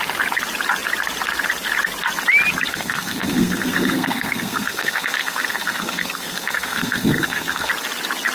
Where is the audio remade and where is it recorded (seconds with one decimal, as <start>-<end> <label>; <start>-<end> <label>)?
0.0-2.7 recorded; 2.7-7.7 remade; 7.7-8.3 recorded